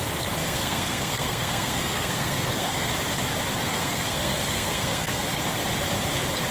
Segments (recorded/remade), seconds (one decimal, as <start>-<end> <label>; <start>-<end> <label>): 0.0-0.4 recorded; 0.4-2.9 remade; 2.9-3.6 recorded; 3.6-5.4 remade; 5.4-6.5 recorded